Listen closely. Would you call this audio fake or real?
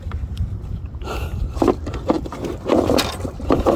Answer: fake